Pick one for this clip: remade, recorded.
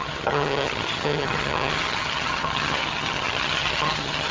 remade